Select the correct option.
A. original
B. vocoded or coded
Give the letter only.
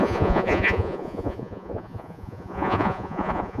B